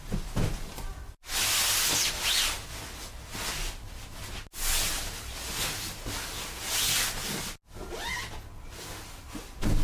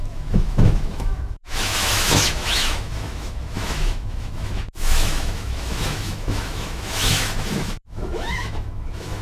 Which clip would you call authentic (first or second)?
first